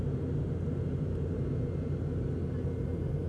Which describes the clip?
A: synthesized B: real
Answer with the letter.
B